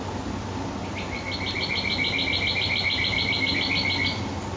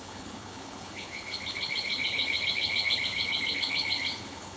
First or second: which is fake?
second